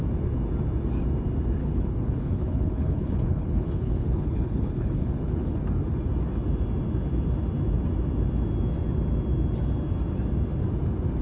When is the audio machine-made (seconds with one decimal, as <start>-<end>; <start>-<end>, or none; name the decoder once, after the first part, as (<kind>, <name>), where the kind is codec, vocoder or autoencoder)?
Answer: 1.6-5.6 (codec, HILCodec)